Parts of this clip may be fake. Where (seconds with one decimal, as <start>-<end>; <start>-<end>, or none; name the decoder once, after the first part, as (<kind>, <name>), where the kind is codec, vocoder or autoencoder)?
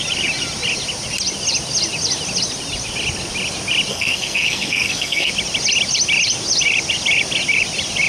3.9-5.3 (codec, SNAC)